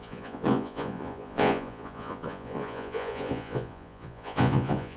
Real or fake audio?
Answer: fake